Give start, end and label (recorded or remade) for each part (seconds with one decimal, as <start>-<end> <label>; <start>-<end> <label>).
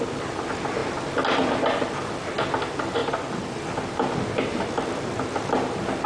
0.0-3.0 recorded; 3.0-3.6 remade; 3.6-6.1 recorded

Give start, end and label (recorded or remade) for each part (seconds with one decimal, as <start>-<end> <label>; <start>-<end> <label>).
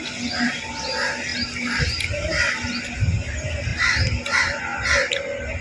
0.0-5.6 recorded